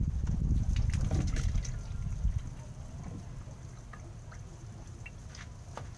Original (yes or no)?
yes